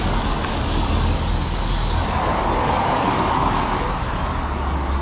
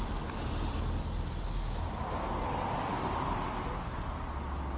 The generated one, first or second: first